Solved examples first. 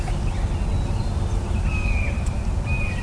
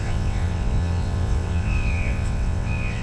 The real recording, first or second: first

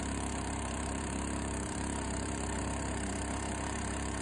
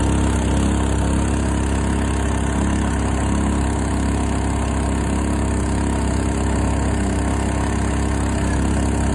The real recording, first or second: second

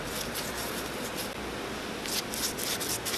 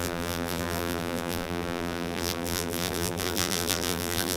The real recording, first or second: first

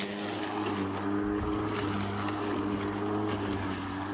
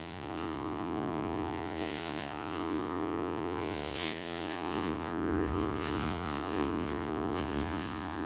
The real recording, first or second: first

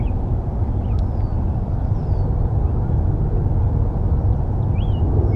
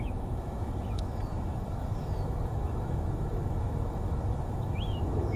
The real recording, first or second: first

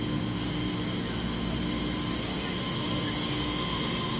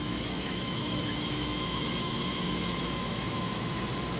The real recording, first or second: first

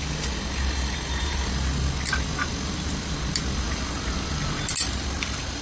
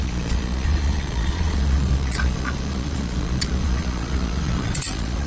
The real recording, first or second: first